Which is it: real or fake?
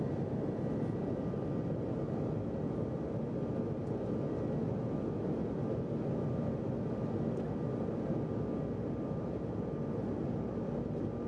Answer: real